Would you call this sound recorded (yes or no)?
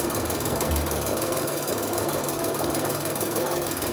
no